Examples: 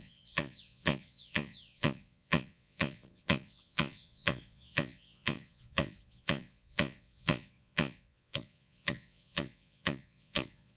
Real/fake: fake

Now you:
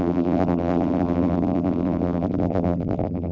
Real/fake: fake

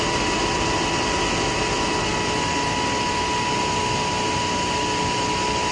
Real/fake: real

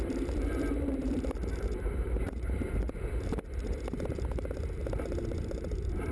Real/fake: fake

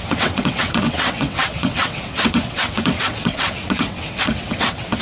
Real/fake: fake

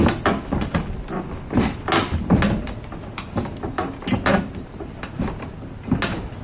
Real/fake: real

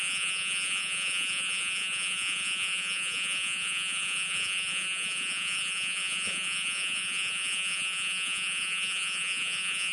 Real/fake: fake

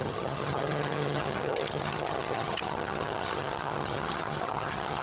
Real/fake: fake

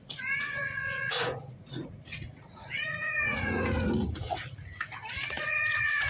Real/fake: fake